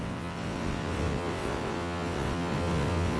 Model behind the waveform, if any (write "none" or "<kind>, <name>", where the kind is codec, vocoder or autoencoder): vocoder, WaveNeXt